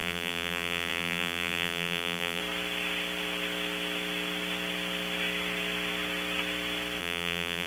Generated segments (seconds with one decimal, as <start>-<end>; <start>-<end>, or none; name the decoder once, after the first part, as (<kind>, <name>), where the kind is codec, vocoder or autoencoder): 0.0-2.4 (vocoder, BigVGAN v2); 7.0-7.7

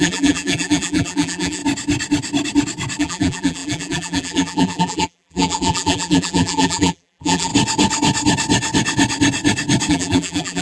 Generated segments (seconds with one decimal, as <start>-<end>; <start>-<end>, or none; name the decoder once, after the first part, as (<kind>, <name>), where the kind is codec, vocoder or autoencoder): 0.0-1.6 (vocoder, BigVGAN v2); 3.0-7.5; 9.9-10.6

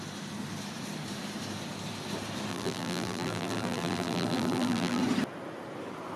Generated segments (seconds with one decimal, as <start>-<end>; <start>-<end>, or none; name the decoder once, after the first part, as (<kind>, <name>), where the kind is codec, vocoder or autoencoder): 2.5-5.0 (vocoder, BigVGAN v2)

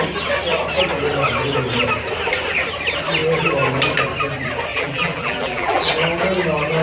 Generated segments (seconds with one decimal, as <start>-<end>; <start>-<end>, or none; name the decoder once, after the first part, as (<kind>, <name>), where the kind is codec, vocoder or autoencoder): 4.7-5.9 (vocoder, BigVGAN v2)

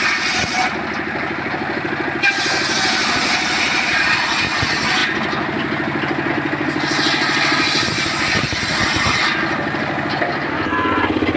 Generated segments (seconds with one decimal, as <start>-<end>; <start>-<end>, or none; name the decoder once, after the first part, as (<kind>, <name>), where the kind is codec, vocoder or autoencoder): none